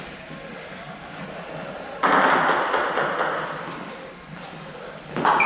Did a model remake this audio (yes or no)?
no